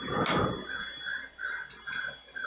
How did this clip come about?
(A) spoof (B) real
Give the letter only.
B